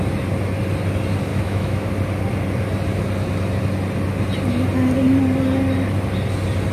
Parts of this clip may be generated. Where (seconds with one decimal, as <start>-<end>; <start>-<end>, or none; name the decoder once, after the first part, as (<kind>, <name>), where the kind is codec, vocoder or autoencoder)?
1.3-1.9 (autoencoder, DAC-VAE)